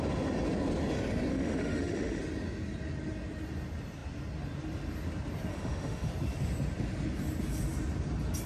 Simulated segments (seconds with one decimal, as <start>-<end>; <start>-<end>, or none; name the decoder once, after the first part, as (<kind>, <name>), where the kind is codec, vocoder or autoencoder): 1.3-2.2 (autoencoder, DAC-VAE); 5.5-6.1